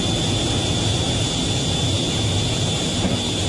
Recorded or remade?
recorded